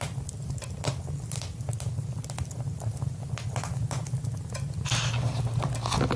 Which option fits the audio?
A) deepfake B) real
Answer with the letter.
B